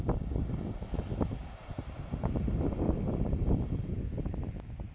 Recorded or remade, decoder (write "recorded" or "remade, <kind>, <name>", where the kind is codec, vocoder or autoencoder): remade, vocoder, BigVGAN v2